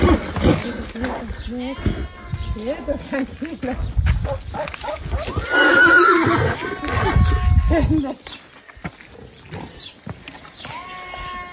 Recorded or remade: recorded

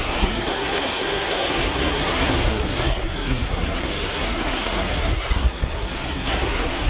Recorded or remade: remade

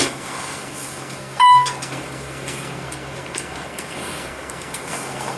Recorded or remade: remade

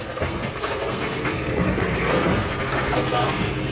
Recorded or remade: remade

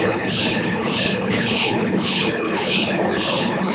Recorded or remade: remade